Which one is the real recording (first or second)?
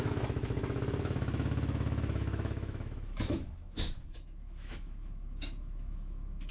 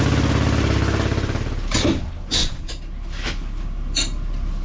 second